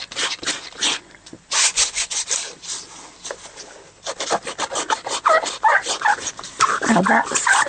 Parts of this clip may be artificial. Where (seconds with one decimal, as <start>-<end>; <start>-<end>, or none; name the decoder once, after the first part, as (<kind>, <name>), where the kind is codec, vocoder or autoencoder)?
0.8-2.2 (vocoder, Vocos)